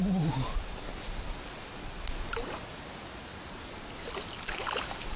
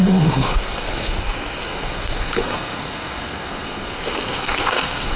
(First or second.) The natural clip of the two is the first